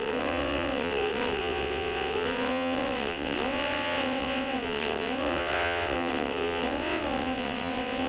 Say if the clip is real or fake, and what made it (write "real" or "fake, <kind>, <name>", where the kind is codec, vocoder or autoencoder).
fake, vocoder, WaveNeXt